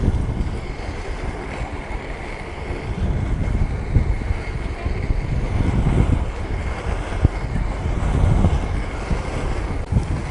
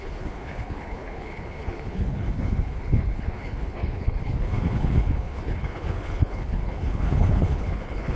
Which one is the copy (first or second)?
second